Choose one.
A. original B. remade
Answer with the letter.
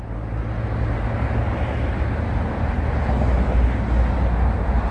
A